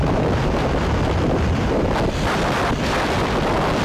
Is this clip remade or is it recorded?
recorded